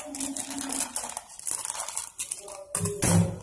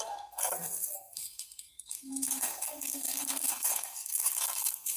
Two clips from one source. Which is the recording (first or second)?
first